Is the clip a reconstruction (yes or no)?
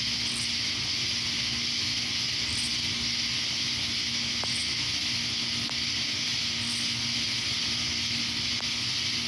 no